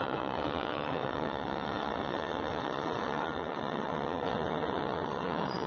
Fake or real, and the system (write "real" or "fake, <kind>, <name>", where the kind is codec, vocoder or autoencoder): fake, vocoder, WaveNeXt